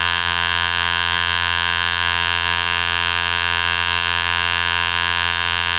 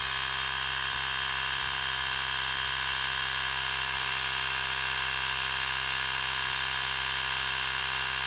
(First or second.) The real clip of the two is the second